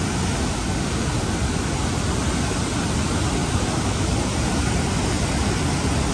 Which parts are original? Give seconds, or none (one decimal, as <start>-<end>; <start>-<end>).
0.0-6.1